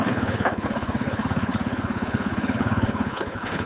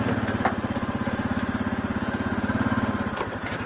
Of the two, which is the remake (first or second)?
first